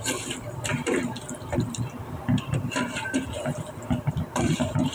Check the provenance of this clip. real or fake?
fake